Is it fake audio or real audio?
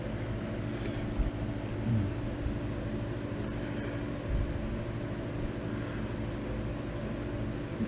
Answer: real